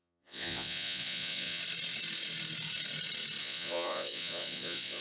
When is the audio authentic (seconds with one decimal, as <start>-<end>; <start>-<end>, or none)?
1.6-3.4

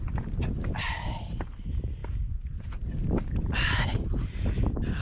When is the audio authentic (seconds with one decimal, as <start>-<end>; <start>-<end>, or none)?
0.0-5.0